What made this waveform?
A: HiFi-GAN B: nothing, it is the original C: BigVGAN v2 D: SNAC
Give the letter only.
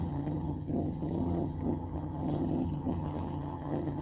A